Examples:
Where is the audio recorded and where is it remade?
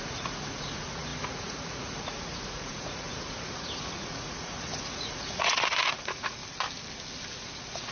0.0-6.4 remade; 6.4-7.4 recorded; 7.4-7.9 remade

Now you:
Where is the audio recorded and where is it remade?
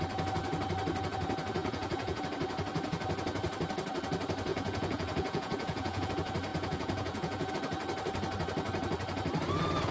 0.0-1.6 recorded; 1.6-2.2 remade; 2.2-4.5 recorded; 4.5-6.1 remade; 6.1-6.5 recorded; 6.5-7.5 remade; 7.5-9.9 recorded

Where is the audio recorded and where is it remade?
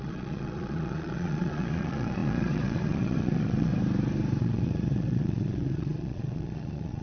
0.0-3.7 remade; 3.7-4.4 recorded; 4.4-7.0 remade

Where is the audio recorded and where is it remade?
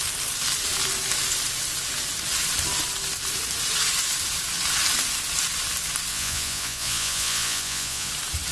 0.0-6.1 recorded; 6.1-8.1 remade; 8.1-8.5 recorded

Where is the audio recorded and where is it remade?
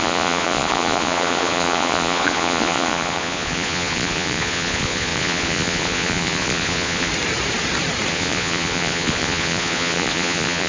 0.0-7.1 remade; 7.1-8.1 recorded; 8.1-10.7 remade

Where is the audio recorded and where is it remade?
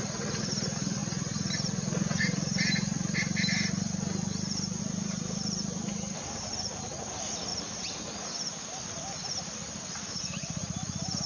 0.0-11.3 recorded